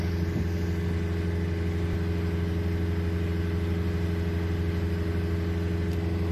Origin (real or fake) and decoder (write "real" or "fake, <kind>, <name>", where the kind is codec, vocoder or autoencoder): real